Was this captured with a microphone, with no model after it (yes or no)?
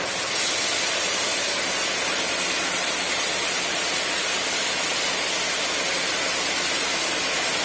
yes